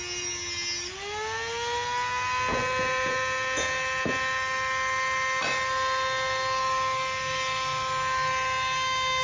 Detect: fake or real real